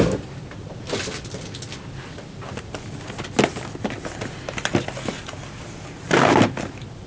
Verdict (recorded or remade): recorded